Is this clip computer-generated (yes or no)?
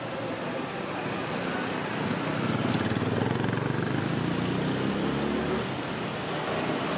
no